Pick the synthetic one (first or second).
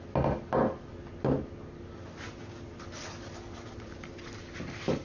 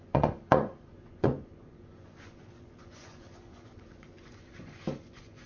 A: second